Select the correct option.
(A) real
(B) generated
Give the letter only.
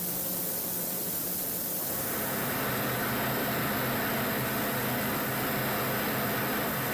A